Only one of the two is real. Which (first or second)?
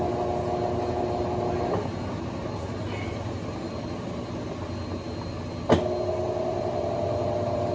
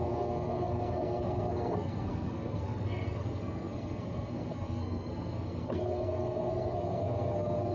first